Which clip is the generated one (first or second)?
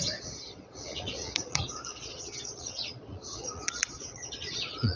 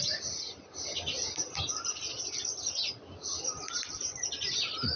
first